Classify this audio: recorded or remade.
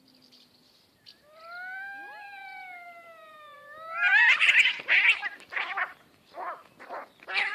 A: recorded